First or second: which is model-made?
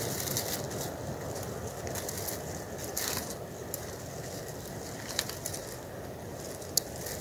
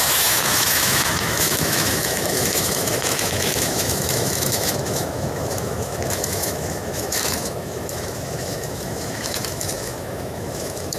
second